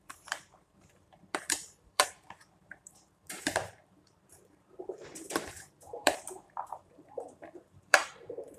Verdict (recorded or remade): remade